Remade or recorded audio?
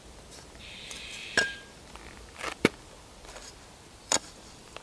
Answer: remade